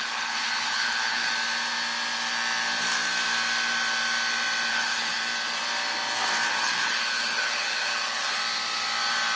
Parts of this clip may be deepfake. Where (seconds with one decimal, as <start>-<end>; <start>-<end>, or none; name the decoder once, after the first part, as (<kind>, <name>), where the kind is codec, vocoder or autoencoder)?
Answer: 0.0-1.3 (codec, HILCodec); 4.7-5.2; 6.5-8.4